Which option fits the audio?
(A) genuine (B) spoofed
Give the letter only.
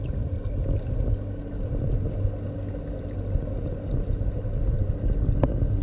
A